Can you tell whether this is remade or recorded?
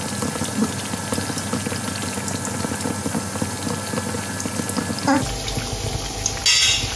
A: recorded